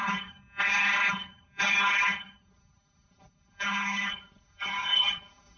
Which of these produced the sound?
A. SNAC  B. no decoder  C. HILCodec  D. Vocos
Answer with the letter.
C